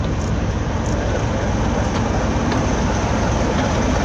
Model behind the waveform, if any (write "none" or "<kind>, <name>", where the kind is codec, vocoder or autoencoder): none